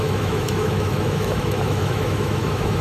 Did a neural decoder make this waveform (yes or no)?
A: yes